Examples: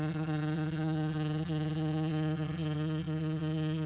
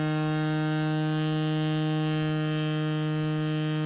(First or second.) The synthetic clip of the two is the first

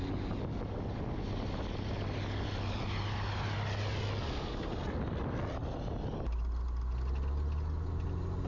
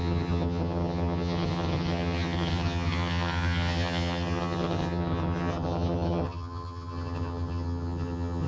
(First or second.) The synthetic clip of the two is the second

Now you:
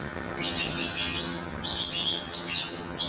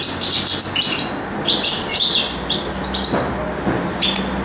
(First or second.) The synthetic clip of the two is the first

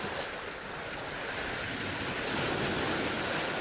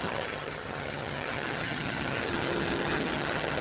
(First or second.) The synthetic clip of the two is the second